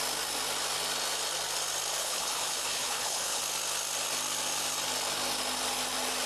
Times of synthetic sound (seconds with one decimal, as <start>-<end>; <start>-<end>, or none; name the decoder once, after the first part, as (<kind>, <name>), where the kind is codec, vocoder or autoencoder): 2.0-3.4 (codec, HILCodec)